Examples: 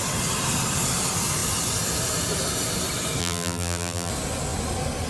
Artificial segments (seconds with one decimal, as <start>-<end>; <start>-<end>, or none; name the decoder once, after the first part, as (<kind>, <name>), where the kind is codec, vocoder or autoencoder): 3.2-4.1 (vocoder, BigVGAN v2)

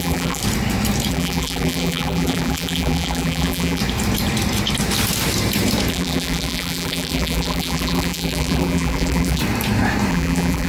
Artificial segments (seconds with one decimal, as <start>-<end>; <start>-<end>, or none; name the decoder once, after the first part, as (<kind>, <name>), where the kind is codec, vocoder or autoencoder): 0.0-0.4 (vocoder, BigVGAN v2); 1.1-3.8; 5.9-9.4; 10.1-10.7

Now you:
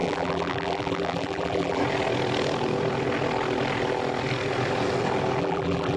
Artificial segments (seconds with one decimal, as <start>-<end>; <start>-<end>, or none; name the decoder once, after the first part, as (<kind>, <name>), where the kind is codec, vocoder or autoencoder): 0.0-1.8 (vocoder, BigVGAN v2); 5.4-6.0